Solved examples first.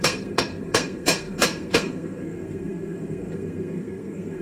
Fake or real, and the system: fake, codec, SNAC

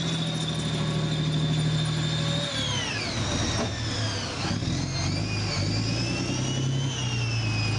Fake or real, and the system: real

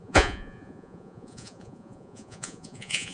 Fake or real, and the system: fake, vocoder, Vocos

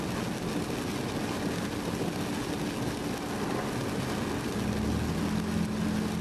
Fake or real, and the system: real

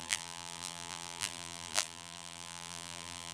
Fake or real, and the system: fake, vocoder, BigVGAN v2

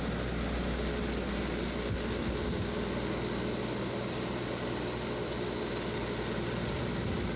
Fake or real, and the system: real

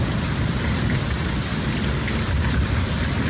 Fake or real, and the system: real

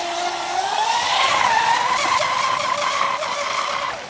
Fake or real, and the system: real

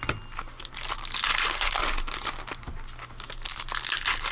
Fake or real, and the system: real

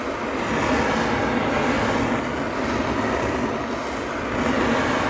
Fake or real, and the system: real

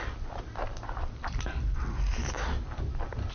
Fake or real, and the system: real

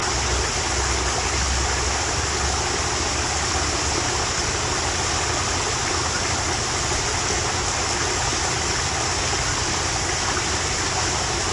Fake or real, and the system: real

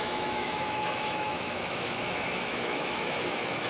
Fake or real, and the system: fake, autoencoder, DAC-VAE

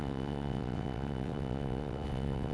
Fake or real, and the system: fake, vocoder, WaveNeXt